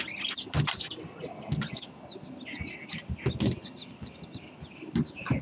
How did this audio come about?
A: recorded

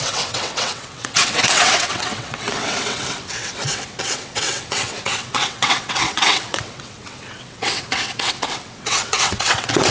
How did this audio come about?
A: remade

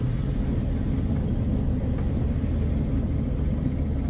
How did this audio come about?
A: recorded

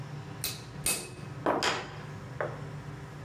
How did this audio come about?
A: recorded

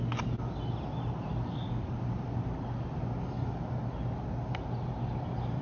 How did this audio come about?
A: recorded